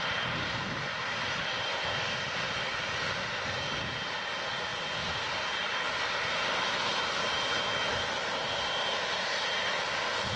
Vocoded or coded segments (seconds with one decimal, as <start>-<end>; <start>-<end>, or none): none